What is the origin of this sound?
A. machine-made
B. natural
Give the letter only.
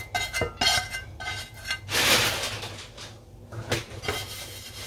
B